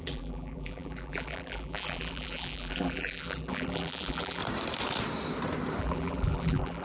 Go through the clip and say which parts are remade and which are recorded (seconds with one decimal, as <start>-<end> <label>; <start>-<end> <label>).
0.0-4.4 remade; 4.4-5.8 recorded; 5.8-6.8 remade